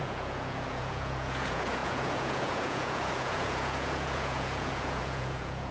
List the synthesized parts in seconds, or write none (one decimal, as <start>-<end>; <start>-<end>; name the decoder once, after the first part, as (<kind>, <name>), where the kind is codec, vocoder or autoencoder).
0.0-5.7 (vocoder, Vocos)